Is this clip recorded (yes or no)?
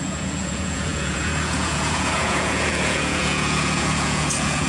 no